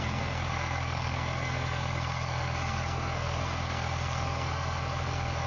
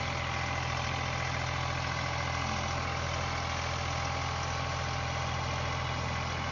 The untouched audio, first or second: second